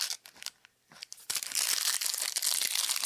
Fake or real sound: real